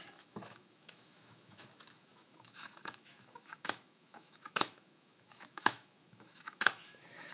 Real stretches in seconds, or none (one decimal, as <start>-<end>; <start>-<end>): none